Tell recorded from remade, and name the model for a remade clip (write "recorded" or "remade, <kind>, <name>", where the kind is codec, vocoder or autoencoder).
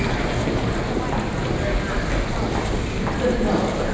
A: recorded